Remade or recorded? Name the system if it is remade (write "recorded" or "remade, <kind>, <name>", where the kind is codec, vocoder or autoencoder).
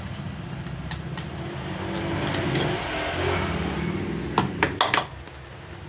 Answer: recorded